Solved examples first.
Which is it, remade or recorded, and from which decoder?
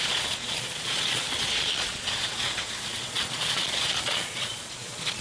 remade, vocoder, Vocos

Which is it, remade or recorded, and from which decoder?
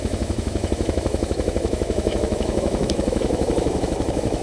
remade, autoencoder, DAC-VAE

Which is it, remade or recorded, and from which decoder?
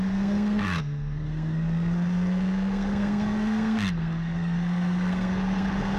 remade, codec, SNAC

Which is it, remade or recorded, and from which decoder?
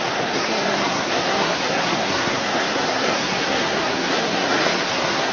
remade, codec, SNAC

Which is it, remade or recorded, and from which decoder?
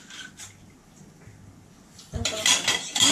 recorded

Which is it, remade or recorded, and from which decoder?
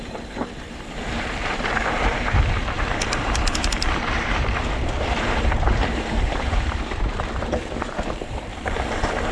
remade, vocoder, BigVGAN v2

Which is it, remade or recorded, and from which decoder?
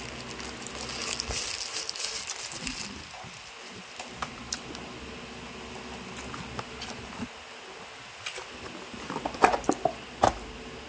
recorded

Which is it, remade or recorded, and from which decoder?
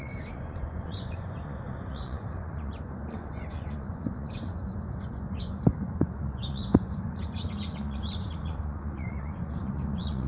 remade, vocoder, Vocos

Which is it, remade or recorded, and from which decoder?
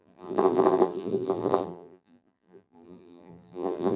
remade, vocoder, BigVGAN v2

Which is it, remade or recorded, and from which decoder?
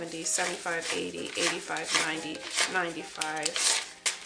recorded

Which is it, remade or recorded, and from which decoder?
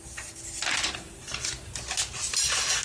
recorded